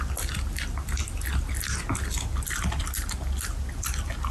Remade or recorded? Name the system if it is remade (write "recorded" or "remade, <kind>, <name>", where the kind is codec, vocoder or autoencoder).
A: recorded